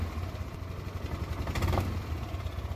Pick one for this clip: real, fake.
real